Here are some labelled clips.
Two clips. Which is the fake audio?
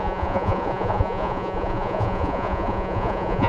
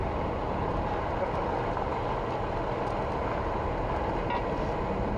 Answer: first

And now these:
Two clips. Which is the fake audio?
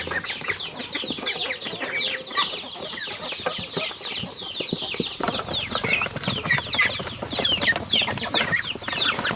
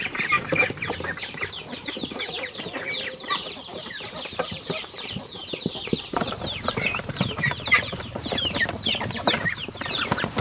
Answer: second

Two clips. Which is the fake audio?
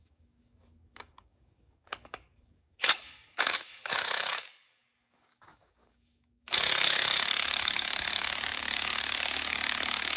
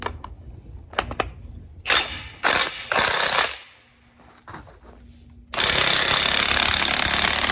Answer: first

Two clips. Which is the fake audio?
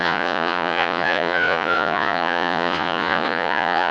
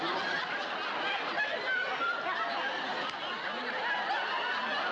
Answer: first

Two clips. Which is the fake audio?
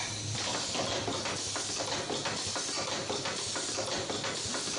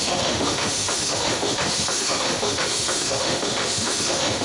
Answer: second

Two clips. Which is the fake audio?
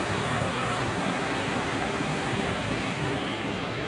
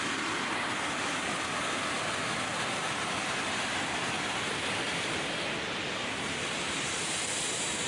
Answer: first